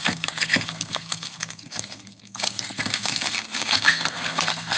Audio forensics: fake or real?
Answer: fake